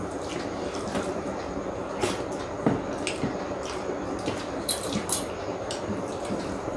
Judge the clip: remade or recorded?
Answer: recorded